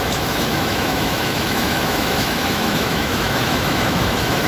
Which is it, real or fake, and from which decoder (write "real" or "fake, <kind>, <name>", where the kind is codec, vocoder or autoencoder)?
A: fake, autoencoder, DAC-VAE